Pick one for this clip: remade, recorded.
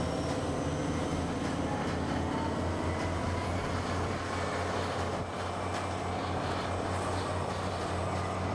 recorded